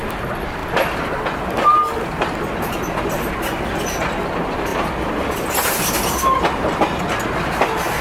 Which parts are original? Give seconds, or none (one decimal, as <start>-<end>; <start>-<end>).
0.0-4.7; 5.4-8.0